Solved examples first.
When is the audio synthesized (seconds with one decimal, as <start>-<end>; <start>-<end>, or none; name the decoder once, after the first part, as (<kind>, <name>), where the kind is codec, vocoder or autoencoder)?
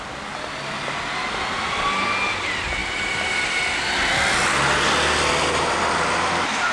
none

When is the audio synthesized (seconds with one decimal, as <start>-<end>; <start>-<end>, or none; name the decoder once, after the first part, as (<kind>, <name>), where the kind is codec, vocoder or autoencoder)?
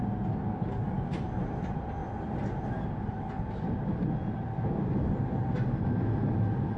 none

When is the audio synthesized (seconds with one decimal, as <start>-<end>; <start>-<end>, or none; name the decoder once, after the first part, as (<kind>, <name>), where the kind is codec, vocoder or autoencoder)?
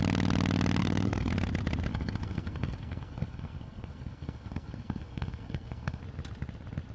0.8-1.3 (codec, SNAC); 1.9-6.0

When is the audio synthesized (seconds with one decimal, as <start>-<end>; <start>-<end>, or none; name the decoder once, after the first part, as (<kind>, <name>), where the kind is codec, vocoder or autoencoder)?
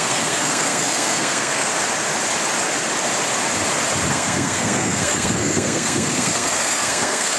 0.0-1.7 (codec, SNAC); 4.1-7.4